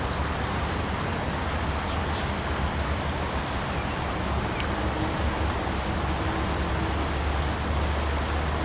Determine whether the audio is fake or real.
real